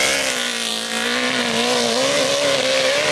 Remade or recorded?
recorded